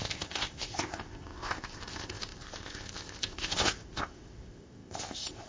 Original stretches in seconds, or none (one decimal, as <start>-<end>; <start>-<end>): none